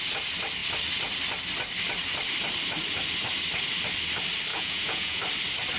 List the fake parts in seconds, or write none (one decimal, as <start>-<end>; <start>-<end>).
4.5-5.2